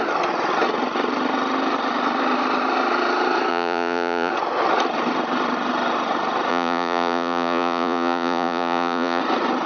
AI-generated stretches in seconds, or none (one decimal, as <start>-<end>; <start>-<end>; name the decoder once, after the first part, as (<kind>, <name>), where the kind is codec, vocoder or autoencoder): 3.5-4.3 (vocoder, Vocos); 6.5-9.2